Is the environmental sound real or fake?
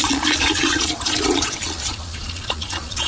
fake